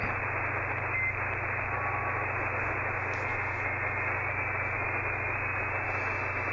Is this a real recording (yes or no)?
yes